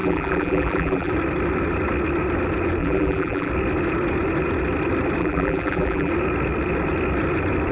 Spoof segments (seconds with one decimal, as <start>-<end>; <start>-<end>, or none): 0.0-1.1; 2.8-3.5; 5.2-6.1